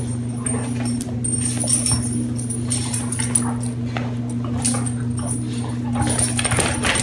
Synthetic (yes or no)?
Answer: no